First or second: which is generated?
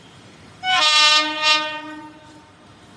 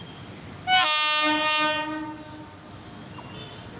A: first